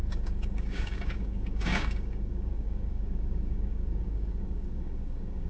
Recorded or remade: remade